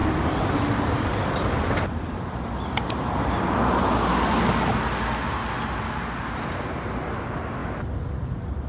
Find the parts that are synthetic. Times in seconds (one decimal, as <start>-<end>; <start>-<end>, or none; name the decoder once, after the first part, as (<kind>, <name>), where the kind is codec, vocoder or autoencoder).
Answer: none